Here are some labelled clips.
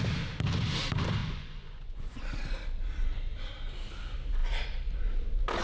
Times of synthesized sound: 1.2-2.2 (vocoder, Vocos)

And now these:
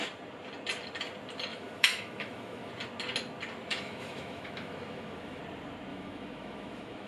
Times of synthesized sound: 1.5-2.7 (autoencoder, DAC-VAE); 3.7-5.4; 5.9-7.1

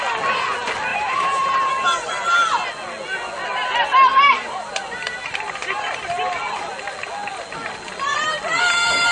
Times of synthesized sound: 0.9-2.1 (vocoder, BigVGAN v2); 4.1-6.2

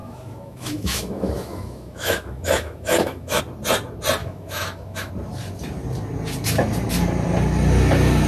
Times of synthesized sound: 0.0-3.4 (autoencoder, DAC-VAE); 4.2-5.1

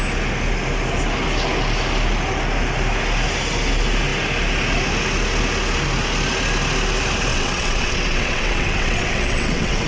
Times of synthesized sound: 7.3-9.9 (vocoder, WaveNeXt)

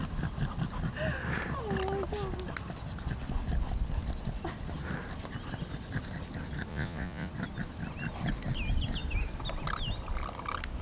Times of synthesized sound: 6.7-7.3 (vocoder, Vocos)